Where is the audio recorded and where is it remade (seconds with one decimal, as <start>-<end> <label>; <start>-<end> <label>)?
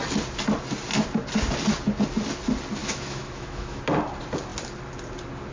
0.0-2.8 recorded; 2.8-3.8 remade; 3.8-5.5 recorded